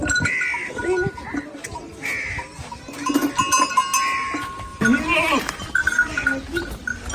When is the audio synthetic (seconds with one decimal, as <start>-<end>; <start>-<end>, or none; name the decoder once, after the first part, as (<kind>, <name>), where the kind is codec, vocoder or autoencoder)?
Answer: 4.7-5.7 (vocoder, BigVGAN v2)

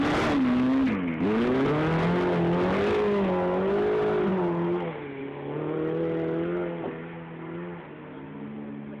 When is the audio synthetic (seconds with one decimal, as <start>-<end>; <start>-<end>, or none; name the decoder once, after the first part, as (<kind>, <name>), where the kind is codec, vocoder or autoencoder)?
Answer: none